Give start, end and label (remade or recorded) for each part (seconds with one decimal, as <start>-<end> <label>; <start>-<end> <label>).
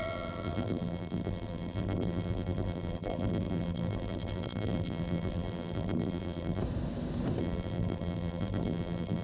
0.0-6.6 remade; 6.6-7.4 recorded; 7.4-9.2 remade